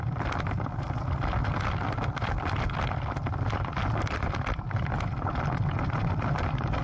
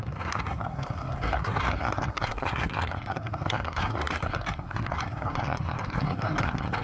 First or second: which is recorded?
first